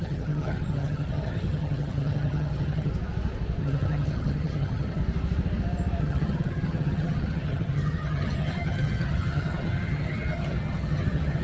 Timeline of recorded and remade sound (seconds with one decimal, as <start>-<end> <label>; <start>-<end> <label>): 0.0-2.9 remade; 2.9-3.6 recorded; 3.6-5.0 remade; 5.0-6.0 recorded; 6.0-11.4 remade